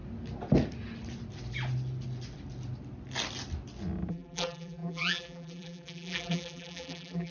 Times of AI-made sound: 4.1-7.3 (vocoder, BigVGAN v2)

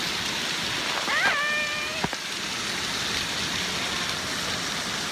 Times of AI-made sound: none

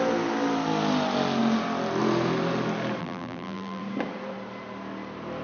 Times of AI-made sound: 3.0-3.8 (vocoder, BigVGAN v2)